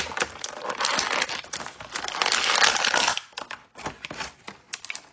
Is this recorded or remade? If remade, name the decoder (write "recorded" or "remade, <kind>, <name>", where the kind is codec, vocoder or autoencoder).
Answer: recorded